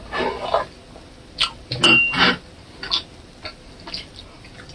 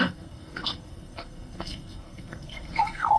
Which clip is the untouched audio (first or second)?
first